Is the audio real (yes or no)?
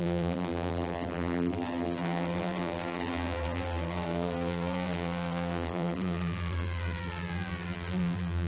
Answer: no